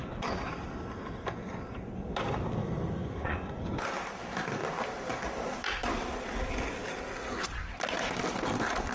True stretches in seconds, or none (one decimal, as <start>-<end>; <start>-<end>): 0.5-3.0; 3.6-8.9